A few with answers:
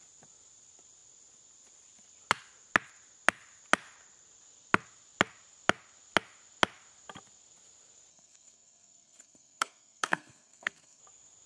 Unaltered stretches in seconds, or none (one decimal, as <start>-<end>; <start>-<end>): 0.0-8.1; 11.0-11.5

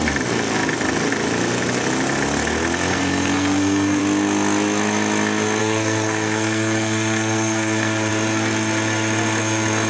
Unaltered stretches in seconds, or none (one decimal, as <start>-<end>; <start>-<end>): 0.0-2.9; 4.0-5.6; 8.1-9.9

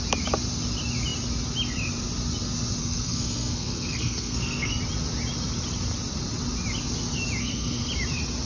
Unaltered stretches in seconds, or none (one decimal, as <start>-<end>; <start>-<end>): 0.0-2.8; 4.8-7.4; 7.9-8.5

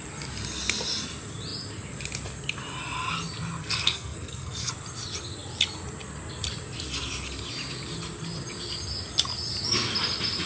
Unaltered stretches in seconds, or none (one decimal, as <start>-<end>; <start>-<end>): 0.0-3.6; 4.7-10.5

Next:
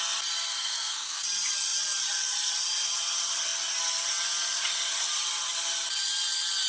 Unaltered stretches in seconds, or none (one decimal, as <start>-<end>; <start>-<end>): 0.0-0.5; 1.2-6.7

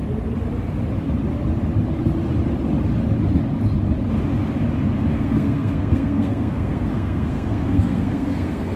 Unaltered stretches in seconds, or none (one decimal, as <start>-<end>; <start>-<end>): 0.0-5.1

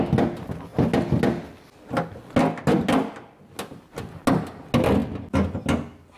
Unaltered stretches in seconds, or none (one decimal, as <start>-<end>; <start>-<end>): 0.0-6.2

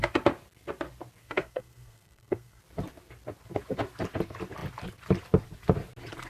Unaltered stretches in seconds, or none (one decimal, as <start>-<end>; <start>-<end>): 0.0-1.2; 2.6-6.3